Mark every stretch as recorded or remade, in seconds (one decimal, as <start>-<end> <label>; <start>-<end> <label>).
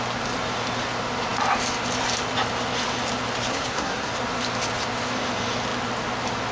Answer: 0.0-3.5 recorded; 3.5-4.1 remade; 4.1-6.5 recorded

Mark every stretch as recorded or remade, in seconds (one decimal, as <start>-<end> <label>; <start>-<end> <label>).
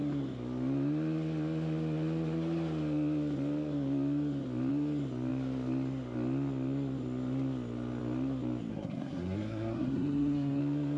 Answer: 0.0-8.7 recorded; 8.7-10.6 remade; 10.6-11.0 recorded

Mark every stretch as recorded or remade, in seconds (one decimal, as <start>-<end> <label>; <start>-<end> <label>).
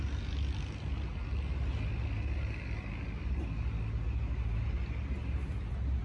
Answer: 0.0-6.0 recorded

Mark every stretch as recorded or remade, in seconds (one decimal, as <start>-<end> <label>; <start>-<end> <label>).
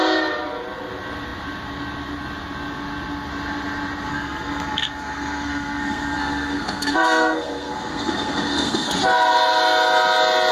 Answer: 0.0-4.1 recorded; 4.1-8.9 remade; 8.9-10.5 recorded